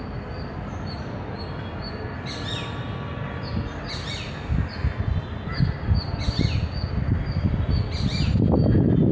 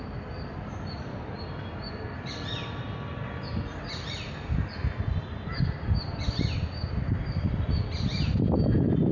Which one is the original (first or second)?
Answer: first